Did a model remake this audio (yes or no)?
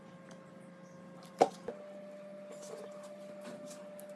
no